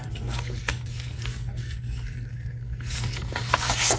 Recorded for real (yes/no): no